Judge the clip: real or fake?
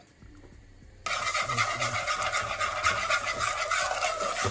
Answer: real